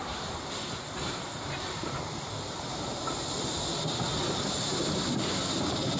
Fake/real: real